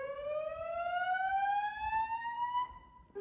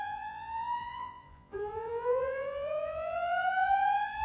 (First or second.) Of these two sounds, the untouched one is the first